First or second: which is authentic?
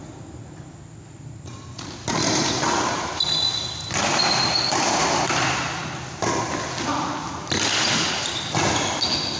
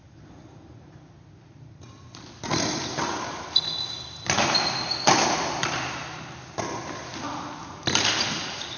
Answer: second